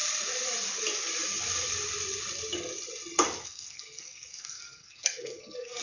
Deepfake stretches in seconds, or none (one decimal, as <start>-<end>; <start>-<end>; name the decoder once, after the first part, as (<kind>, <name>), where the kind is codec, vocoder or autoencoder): 3.4-5.8 (codec, SNAC)